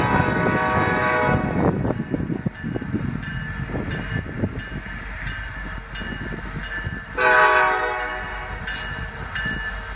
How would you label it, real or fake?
real